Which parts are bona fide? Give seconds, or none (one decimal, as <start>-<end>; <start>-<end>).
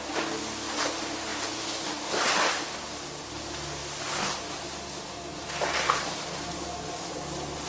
0.0-7.7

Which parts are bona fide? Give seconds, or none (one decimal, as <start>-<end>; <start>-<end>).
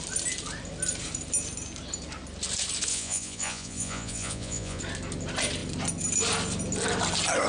0.0-2.9; 4.8-7.5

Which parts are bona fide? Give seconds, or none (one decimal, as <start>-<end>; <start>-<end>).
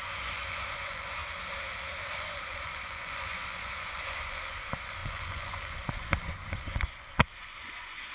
1.2-2.1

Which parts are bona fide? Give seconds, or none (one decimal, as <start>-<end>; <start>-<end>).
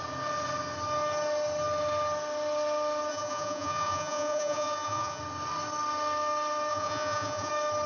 0.0-3.1; 5.2-6.7; 7.5-7.9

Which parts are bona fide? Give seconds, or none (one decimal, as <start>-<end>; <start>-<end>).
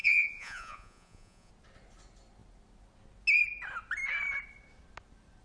1.5-5.4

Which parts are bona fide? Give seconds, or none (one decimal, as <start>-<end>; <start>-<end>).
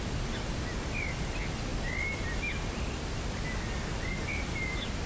0.0-5.1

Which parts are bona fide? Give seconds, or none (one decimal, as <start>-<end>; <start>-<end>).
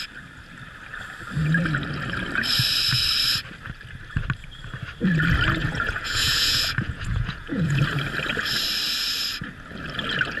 0.0-5.6; 7.8-10.4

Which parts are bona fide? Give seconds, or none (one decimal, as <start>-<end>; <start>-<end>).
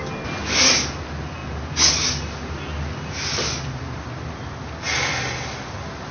0.0-6.1